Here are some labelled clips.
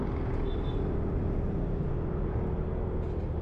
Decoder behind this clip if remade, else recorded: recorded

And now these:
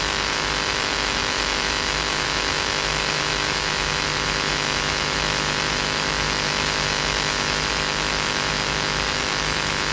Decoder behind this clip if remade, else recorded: remade, autoencoder, DAC-VAE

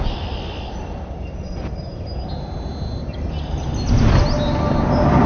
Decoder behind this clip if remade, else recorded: recorded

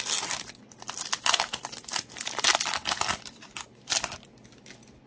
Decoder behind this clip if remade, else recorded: recorded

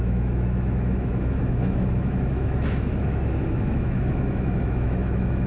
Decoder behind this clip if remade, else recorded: remade, autoencoder, DAC-VAE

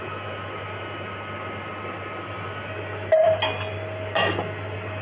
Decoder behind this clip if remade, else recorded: recorded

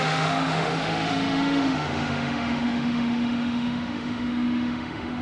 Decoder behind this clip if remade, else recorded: remade, autoencoder, DAC-VAE